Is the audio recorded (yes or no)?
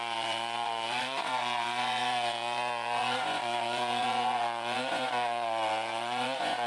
no